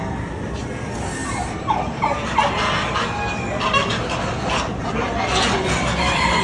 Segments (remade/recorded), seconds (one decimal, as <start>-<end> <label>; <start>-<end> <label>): 0.0-6.4 recorded